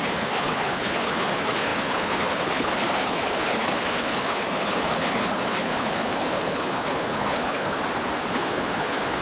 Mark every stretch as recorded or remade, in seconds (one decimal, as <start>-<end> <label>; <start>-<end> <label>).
0.0-7.8 remade; 7.8-8.3 recorded; 8.3-9.2 remade